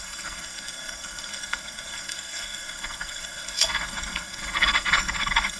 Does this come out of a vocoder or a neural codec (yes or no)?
yes